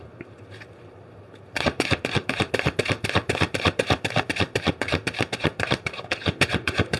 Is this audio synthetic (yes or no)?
yes